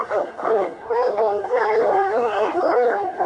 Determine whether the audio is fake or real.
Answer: fake